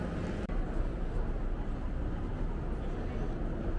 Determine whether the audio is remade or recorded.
recorded